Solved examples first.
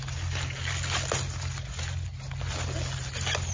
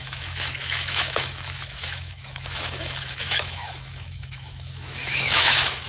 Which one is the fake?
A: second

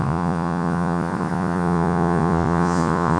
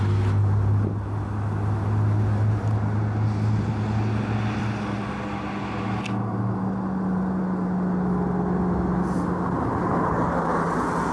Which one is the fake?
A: first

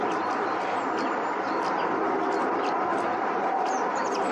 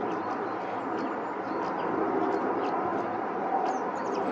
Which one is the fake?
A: first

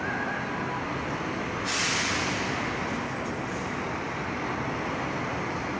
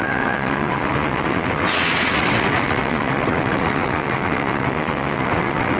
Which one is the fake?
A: second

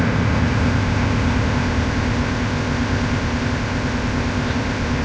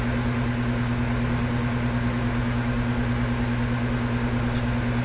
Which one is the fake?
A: first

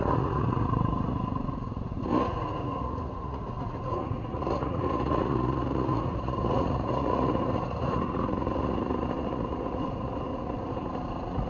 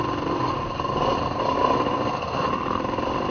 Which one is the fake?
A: first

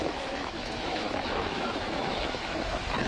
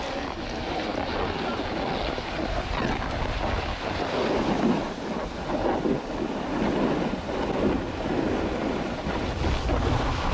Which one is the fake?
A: first